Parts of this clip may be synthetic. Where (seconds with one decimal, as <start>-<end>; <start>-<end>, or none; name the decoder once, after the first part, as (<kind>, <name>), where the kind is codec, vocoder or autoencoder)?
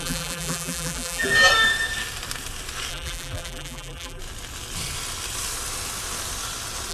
0.0-1.3 (vocoder, BigVGAN v2); 2.9-4.2